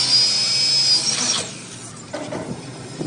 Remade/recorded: recorded